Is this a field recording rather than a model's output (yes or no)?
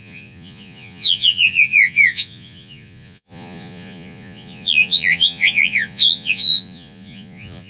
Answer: no